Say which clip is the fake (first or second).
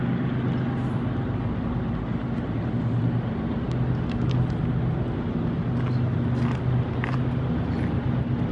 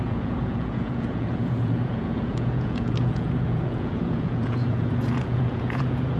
second